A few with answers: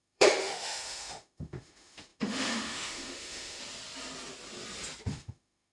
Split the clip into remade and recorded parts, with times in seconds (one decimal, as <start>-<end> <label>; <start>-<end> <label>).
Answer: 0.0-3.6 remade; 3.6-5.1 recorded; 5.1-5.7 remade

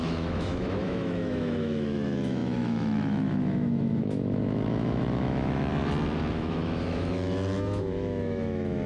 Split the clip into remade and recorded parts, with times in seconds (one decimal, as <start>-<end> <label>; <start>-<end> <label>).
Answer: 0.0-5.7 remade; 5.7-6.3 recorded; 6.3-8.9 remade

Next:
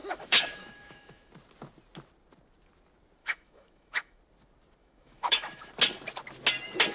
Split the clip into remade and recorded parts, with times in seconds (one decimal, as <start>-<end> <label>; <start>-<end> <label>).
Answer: 0.0-1.3 remade; 1.3-3.2 recorded; 3.2-4.2 remade; 4.2-4.8 recorded; 4.8-5.7 remade; 5.7-6.9 recorded

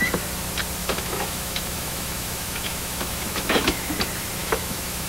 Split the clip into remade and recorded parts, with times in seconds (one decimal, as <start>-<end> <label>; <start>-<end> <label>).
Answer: 0.0-0.8 recorded; 0.8-3.9 remade; 3.9-4.4 recorded; 4.4-5.1 remade

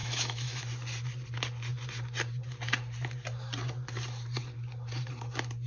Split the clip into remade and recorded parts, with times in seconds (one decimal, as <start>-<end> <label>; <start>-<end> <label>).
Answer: 0.0-0.6 remade; 0.6-5.7 recorded

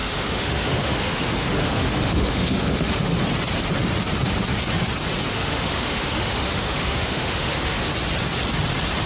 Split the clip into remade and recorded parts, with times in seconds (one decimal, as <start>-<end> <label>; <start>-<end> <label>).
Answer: 0.0-3.1 remade; 3.1-5.3 recorded; 5.3-7.9 remade; 7.9-9.1 recorded